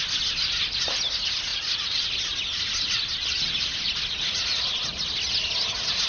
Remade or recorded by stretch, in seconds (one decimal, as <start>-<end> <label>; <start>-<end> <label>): 0.0-6.1 recorded